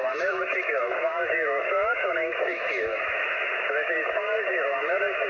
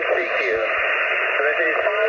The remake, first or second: first